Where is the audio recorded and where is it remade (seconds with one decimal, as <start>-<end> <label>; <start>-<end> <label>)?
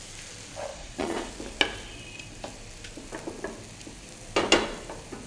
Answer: 0.0-0.7 recorded; 0.7-1.3 remade; 1.3-5.3 recorded